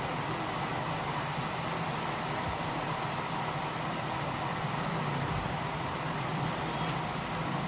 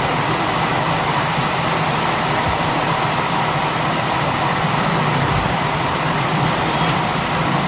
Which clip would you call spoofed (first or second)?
second